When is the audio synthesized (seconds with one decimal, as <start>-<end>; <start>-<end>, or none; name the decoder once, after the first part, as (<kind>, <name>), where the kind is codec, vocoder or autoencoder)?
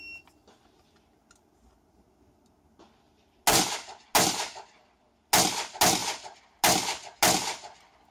none